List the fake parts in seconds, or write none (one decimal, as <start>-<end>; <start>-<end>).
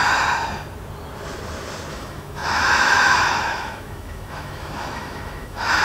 1.9-5.8